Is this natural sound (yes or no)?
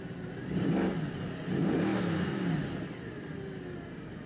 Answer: yes